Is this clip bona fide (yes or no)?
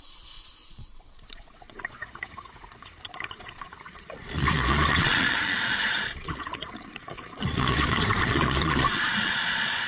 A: no